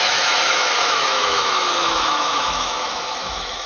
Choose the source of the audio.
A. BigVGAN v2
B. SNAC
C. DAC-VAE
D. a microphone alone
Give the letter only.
C